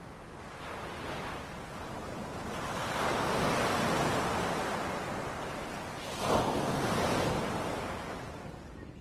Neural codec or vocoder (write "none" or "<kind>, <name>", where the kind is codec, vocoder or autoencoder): none